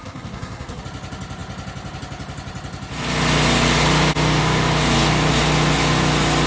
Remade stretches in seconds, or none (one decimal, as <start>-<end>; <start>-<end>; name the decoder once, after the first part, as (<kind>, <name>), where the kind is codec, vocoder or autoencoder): 0.0-0.8 (codec, SNAC)

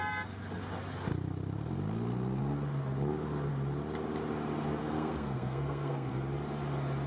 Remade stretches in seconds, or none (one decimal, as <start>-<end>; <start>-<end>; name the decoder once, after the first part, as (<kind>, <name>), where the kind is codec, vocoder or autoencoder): 4.8-6.1 (codec, SNAC)

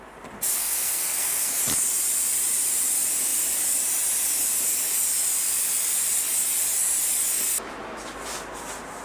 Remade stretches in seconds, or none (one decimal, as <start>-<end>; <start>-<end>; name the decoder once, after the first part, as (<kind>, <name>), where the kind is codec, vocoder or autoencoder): 0.6-1.6 (codec, SNAC)